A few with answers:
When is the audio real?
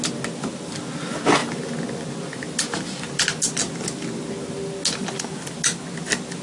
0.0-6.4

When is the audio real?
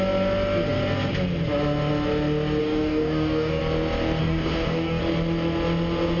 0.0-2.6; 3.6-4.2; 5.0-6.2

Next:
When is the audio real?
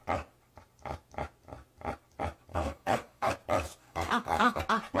0.0-2.5; 3.3-3.8; 4.6-5.0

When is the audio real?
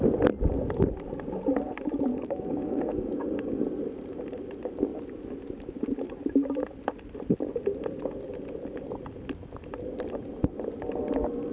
0.0-2.1; 3.6-11.5